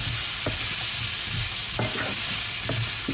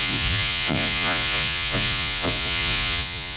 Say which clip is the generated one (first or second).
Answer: second